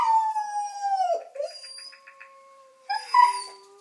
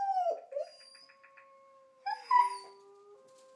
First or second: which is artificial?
first